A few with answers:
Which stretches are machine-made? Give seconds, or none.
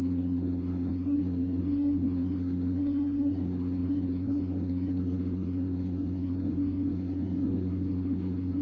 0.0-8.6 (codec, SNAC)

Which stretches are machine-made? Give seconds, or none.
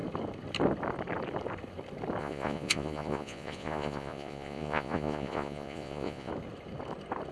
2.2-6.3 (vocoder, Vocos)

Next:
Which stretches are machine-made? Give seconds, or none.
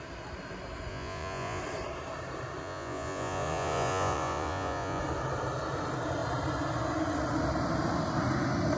0.9-1.6 (vocoder, Vocos); 2.6-5.0